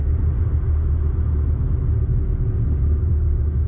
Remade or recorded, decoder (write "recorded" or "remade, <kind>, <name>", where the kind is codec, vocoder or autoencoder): recorded